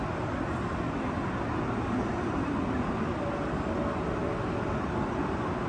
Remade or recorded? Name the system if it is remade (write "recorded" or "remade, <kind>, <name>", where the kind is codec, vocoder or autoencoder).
recorded